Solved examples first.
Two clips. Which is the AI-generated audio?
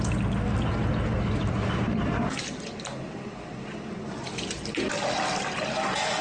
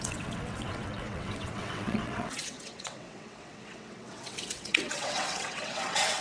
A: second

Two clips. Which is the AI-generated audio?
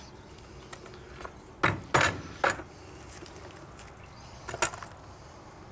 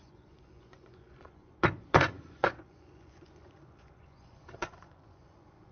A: second